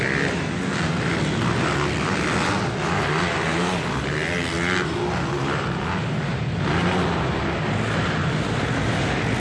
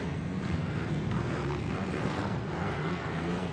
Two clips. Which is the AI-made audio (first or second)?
second